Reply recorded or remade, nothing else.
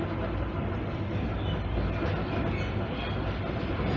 recorded